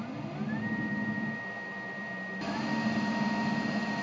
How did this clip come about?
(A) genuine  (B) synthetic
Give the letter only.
A